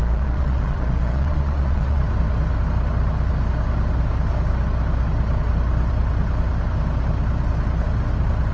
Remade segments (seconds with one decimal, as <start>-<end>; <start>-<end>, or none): 0.0-2.0